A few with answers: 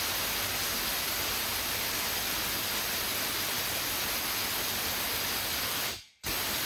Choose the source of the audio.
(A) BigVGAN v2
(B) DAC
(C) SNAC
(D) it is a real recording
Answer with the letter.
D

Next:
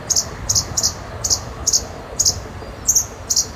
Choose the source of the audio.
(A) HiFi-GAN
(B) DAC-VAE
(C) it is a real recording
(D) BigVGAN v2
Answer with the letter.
C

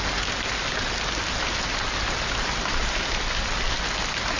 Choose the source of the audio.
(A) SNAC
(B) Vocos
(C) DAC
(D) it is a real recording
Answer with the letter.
D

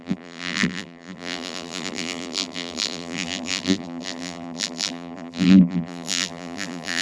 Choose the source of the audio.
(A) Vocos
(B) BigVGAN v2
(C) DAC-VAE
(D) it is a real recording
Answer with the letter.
B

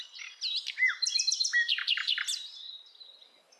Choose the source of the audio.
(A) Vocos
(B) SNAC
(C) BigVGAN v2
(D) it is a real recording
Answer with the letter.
D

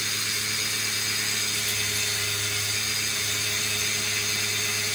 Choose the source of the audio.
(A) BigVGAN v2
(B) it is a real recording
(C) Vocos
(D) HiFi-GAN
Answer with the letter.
B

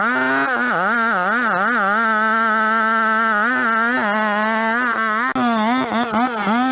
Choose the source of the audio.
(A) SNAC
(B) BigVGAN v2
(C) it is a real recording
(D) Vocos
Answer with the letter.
C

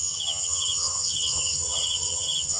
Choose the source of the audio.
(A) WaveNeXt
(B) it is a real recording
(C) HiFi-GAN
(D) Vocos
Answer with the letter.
C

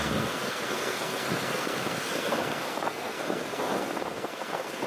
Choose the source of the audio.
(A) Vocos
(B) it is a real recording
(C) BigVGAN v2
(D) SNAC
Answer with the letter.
D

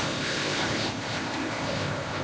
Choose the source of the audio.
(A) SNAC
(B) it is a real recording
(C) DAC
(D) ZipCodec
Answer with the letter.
D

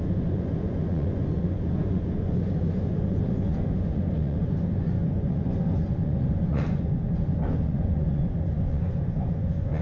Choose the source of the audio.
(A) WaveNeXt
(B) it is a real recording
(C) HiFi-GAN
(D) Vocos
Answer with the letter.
D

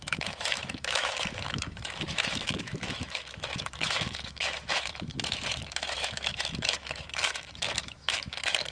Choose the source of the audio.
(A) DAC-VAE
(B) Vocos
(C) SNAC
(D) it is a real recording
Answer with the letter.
A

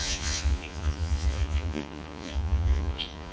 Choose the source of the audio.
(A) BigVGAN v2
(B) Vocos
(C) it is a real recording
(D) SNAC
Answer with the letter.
B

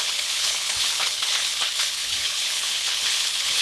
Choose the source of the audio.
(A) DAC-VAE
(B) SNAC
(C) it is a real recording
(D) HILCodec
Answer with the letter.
D